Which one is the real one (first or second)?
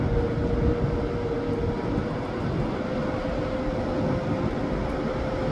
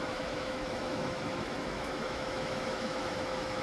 first